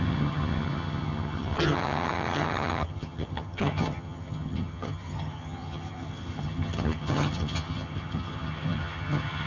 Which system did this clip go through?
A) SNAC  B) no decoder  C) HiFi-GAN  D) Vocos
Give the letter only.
C